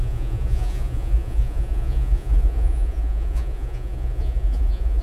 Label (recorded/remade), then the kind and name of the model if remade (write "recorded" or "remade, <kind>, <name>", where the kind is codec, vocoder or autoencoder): remade, vocoder, Vocos